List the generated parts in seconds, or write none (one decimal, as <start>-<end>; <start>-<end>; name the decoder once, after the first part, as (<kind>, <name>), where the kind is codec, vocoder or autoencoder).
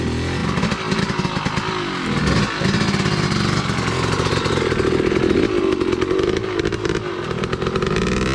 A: none